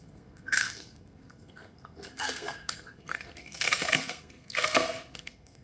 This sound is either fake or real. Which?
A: fake